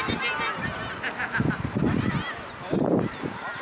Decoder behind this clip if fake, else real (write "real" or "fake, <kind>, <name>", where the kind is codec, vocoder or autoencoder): real